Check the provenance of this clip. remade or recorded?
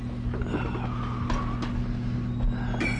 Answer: recorded